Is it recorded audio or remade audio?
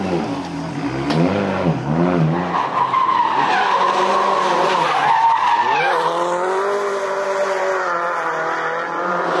recorded